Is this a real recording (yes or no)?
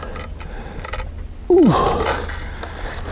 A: yes